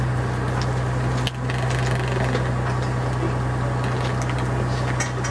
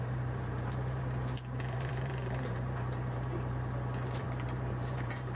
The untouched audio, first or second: first